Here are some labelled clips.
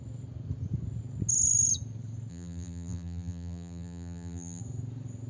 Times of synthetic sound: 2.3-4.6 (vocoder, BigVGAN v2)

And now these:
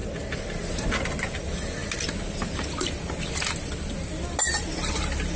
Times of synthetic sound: none

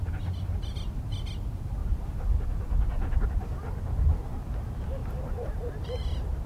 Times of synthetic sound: 1.8-4.3 (vocoder, BigVGAN v2); 5.0-6.5

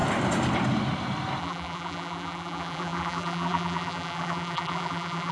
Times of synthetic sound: 1.4-5.3 (vocoder, BigVGAN v2)

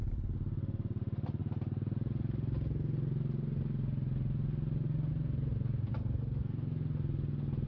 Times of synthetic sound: 5.5-6.2 (vocoder, BigVGAN v2)

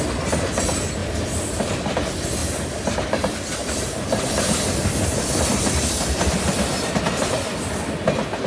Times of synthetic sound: 1.0-1.6 (vocoder, BigVGAN v2); 2.4-6.9